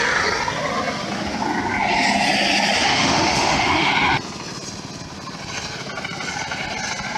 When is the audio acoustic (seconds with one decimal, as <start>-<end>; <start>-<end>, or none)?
0.0-2.8; 3.9-7.2